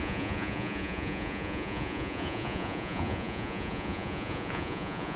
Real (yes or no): no